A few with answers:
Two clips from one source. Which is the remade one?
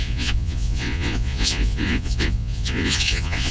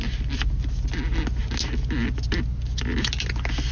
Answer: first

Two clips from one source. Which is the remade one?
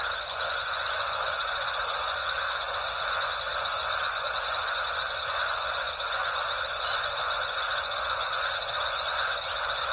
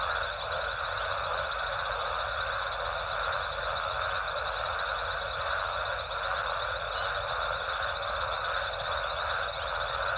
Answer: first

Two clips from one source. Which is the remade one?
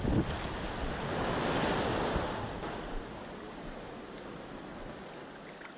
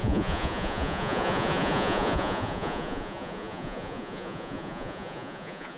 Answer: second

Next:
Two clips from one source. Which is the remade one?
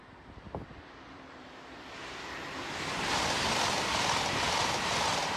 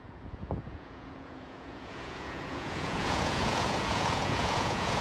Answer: second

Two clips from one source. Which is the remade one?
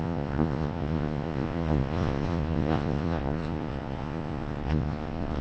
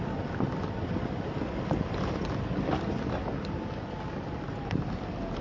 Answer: first